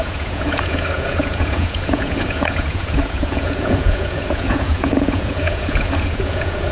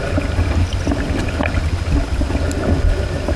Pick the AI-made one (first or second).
first